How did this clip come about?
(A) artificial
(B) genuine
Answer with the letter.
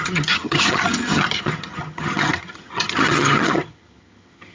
A